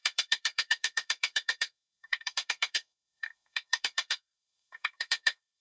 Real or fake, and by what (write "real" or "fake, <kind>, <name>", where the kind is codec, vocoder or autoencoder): fake, codec, SNAC